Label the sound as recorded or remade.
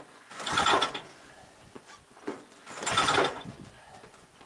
remade